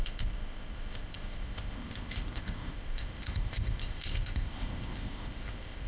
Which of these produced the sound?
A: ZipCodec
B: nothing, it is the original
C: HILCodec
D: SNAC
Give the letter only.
A